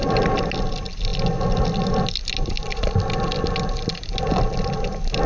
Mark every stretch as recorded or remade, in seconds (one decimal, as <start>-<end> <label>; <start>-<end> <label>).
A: 0.0-5.3 recorded